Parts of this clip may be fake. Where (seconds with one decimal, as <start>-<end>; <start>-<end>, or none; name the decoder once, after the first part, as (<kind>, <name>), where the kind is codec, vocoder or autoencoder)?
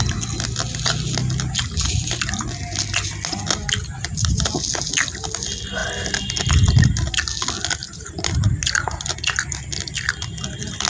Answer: 7.8-8.5 (vocoder, BigVGAN v2)